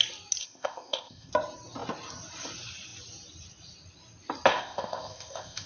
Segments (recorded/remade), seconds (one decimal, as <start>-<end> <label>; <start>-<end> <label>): 0.0-0.4 recorded; 0.4-1.3 remade; 1.3-4.5 recorded; 4.5-5.7 remade